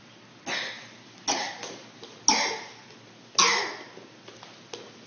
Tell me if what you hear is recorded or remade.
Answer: recorded